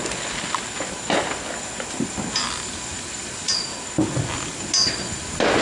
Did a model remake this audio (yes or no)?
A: no